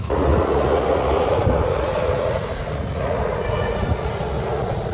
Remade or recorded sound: remade